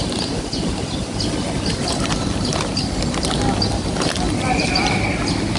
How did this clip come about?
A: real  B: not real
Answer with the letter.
A